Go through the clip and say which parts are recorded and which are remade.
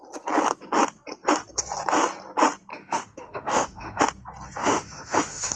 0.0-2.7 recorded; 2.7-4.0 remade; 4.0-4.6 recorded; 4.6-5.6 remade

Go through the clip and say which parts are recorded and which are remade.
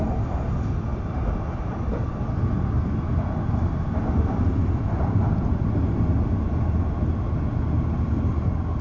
0.0-8.8 recorded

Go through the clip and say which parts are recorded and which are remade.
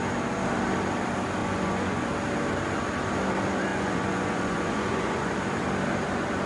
0.0-1.4 recorded; 1.4-2.1 remade; 2.1-3.7 recorded; 3.7-5.3 remade; 5.3-6.5 recorded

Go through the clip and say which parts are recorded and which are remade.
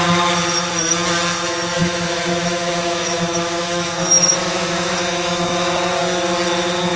0.0-1.8 recorded; 1.8-5.5 remade; 5.5-7.0 recorded